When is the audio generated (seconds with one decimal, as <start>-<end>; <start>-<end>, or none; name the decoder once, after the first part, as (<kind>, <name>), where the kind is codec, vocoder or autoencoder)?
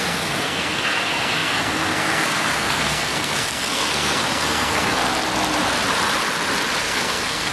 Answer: 0.0-5.0 (codec, SNAC); 6.8-7.5